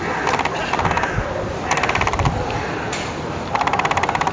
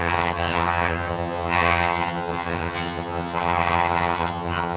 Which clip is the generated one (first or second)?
second